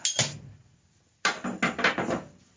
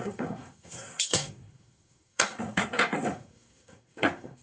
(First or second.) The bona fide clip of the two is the first